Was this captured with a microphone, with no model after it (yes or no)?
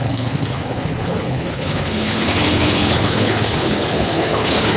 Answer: no